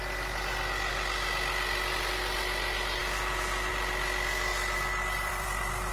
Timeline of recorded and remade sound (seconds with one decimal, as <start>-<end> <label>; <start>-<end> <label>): 0.0-4.5 recorded; 4.5-5.9 remade